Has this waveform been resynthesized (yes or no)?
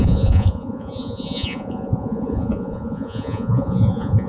yes